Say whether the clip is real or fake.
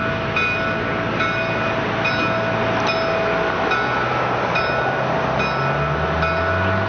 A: real